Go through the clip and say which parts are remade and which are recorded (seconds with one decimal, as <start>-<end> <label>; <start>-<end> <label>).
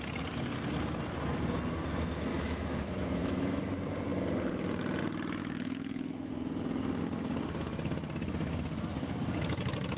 0.0-2.3 recorded; 2.3-3.6 remade; 3.6-5.4 recorded; 5.4-6.3 remade; 6.3-10.0 recorded